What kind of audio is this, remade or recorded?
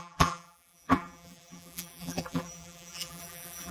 remade